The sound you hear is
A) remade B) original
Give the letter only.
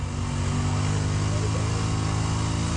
B